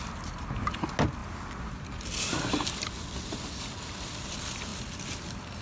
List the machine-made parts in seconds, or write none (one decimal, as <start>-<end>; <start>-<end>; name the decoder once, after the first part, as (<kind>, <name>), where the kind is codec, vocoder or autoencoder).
none